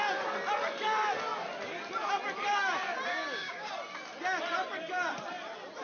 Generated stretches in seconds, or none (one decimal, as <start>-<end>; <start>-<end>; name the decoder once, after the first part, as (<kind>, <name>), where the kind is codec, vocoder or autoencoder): 3.1-3.7 (codec, DAC)